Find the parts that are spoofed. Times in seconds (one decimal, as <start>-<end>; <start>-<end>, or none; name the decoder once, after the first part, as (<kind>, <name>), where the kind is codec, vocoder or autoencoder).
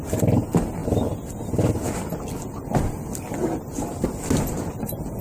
none